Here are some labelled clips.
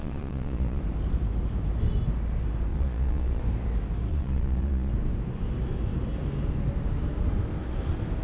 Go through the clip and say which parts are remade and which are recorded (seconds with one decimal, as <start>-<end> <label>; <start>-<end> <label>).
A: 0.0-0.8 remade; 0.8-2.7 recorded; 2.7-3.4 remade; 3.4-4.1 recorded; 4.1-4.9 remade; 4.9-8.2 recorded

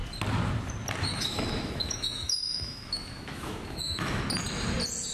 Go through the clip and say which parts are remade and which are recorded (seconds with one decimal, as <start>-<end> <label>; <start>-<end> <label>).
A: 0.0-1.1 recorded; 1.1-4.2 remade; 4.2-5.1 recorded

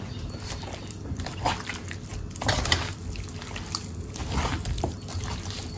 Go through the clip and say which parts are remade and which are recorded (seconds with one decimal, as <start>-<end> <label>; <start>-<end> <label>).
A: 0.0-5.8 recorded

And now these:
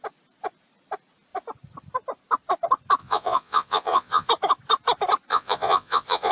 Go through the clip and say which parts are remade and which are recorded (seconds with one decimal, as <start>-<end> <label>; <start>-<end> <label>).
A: 0.0-3.0 recorded; 3.0-4.3 remade; 4.3-5.3 recorded; 5.3-6.3 remade

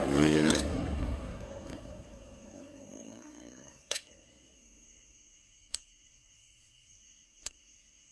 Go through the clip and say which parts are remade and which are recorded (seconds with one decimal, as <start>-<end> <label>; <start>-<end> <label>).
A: 0.0-8.1 remade

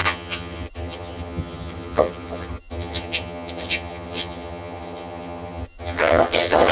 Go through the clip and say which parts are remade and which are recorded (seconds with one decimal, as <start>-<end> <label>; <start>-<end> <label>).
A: 0.0-6.7 remade

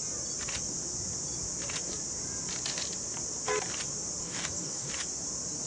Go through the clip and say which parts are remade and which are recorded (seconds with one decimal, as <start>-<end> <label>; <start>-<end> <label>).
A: 0.0-4.2 recorded; 4.2-4.9 remade; 4.9-5.7 recorded

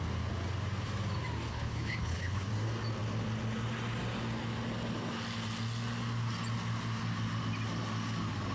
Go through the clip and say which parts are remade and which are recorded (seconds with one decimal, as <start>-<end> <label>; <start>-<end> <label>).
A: 0.0-1.5 recorded; 1.5-2.5 remade; 2.5-8.5 recorded